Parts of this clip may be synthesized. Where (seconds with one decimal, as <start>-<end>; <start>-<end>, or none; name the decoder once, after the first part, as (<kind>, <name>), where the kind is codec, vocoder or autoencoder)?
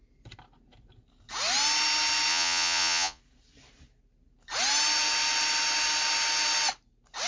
2.3-3.2 (vocoder, Vocos)